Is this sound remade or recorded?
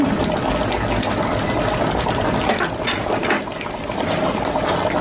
recorded